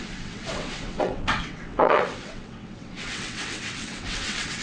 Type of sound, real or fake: fake